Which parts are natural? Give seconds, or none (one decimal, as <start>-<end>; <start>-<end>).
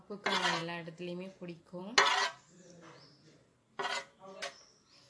0.0-5.1